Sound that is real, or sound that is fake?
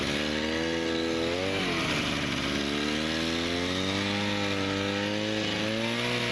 real